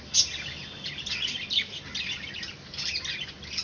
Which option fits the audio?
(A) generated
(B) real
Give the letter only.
B